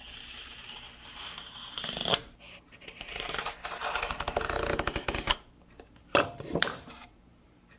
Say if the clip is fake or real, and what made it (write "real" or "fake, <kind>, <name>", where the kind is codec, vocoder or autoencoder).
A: fake, vocoder, BigVGAN v2